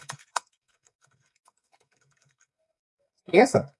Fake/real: fake